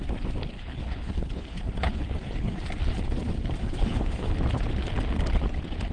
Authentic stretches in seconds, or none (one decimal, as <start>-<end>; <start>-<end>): 0.0-0.5; 2.6-3.6; 4.3-5.9